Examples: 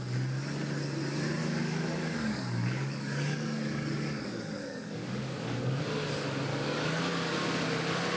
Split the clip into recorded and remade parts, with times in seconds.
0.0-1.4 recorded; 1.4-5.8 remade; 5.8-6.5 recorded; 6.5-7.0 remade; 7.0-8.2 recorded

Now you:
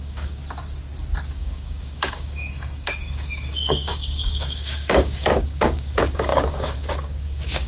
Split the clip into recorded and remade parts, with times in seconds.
0.0-0.4 remade; 0.4-1.3 recorded; 1.3-7.7 remade

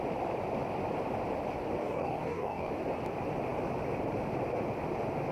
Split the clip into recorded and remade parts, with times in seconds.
0.0-1.8 recorded; 1.8-2.7 remade; 2.7-5.3 recorded

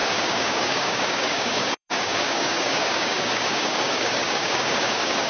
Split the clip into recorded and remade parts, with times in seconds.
0.0-5.3 remade

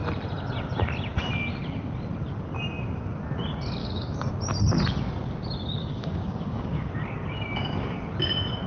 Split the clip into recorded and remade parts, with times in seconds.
0.0-3.8 recorded; 3.8-4.3 remade; 4.3-5.8 recorded; 5.8-6.9 remade; 6.9-8.7 recorded